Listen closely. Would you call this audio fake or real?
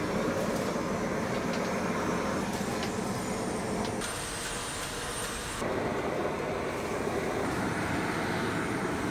real